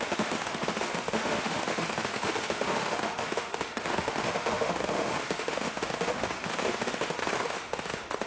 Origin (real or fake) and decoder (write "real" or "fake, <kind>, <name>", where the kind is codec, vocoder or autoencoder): fake, autoencoder, DAC-VAE